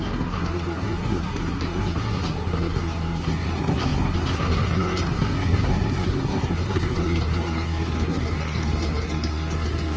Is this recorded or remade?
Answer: remade